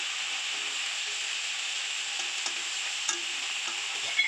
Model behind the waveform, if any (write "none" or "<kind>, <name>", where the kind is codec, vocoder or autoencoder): none